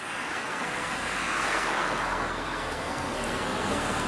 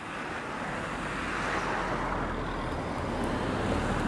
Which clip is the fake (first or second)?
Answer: first